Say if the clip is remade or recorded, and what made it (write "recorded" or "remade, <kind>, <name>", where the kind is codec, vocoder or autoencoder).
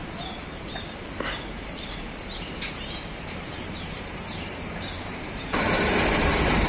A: remade, vocoder, BigVGAN v2